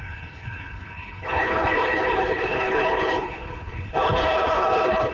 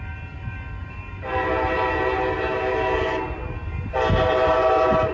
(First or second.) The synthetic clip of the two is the first